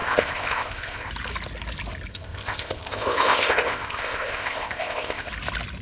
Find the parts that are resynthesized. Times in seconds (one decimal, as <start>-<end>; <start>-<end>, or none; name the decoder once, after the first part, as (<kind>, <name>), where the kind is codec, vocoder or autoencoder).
0.0-1.1 (codec, ZipCodec); 2.1-5.3